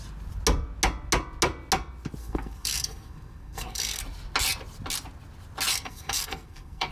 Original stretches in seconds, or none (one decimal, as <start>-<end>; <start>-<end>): 0.0-2.2; 4.0-5.7